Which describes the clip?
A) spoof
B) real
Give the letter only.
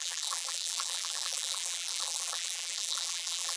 A